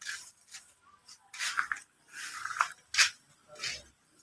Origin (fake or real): real